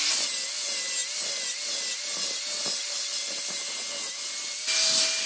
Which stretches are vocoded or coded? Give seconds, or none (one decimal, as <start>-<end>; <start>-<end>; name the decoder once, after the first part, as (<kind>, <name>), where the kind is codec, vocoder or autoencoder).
none